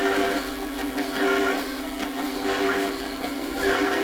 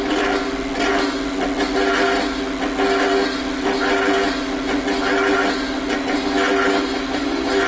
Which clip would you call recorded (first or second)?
second